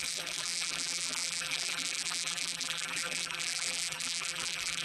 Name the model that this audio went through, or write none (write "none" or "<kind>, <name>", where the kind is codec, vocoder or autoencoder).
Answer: vocoder, BigVGAN v2